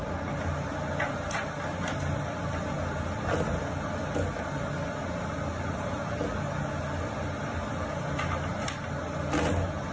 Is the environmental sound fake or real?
real